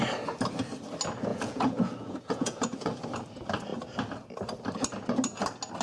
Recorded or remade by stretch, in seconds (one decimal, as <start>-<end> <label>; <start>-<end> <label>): 0.0-1.3 recorded; 1.3-3.0 remade; 3.0-5.8 recorded